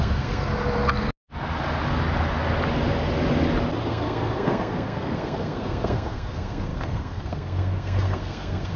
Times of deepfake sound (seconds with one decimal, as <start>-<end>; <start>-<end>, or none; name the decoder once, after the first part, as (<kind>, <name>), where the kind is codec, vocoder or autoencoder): 0.0-0.5 (codec, SNAC); 3.9-8.8